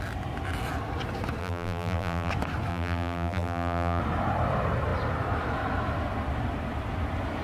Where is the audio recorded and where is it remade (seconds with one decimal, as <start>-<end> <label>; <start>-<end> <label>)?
0.0-1.4 recorded; 1.4-2.3 remade; 2.3-2.7 recorded; 2.7-4.0 remade; 4.0-7.4 recorded